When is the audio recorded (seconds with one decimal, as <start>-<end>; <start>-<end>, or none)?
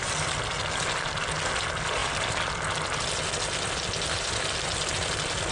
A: 0.0-5.5